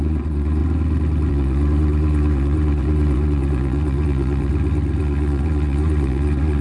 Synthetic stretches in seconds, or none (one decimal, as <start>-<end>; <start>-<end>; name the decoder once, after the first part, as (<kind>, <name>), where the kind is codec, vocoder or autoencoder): 0.0-0.6 (vocoder, Vocos); 1.3-4.5; 5.0-6.6